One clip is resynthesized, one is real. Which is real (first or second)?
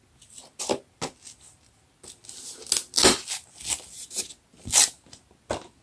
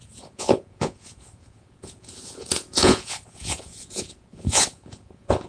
first